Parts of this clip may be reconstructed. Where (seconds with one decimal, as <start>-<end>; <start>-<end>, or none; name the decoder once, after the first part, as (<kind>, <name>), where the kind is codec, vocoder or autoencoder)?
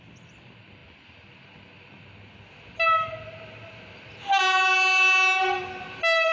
none